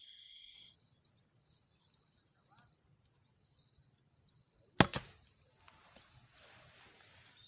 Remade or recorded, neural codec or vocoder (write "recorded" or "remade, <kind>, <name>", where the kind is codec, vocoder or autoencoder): recorded